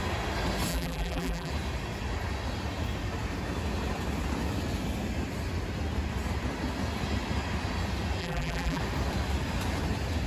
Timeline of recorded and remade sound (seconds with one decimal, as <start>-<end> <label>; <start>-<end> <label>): 0.0-0.7 recorded; 0.7-1.5 remade; 1.5-8.2 recorded; 8.2-8.8 remade; 8.8-10.3 recorded